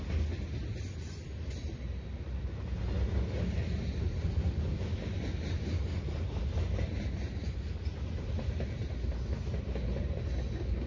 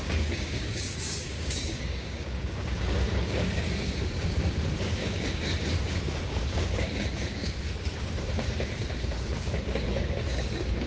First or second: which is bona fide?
first